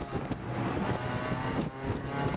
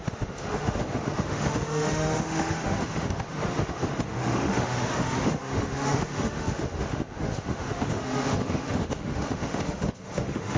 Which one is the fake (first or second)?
second